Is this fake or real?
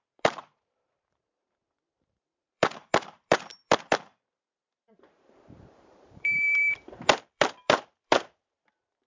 fake